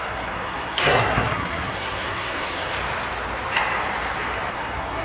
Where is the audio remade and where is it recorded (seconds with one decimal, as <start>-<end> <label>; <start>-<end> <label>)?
0.0-2.7 remade; 2.7-4.5 recorded; 4.5-5.0 remade